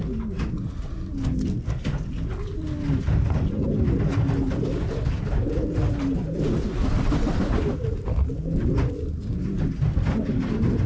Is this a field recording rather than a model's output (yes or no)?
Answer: yes